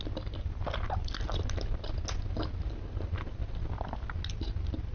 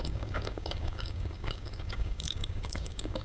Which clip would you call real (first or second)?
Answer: first